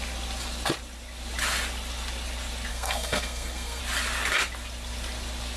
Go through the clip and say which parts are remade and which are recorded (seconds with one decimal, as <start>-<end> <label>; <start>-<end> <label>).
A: 0.0-2.7 recorded; 2.7-3.8 remade; 3.8-5.6 recorded